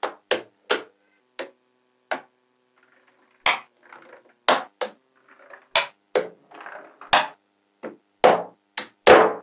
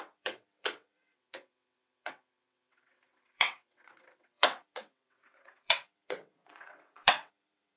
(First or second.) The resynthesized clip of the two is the second